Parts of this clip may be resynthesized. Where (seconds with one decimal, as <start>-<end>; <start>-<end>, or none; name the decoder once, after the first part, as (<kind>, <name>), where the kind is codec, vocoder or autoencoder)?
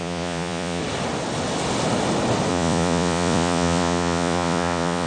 0.0-0.8 (vocoder, Vocos); 2.5-5.1